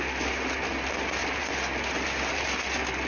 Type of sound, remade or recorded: recorded